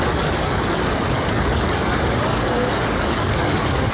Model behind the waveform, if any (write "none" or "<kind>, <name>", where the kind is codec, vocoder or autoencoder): codec, DAC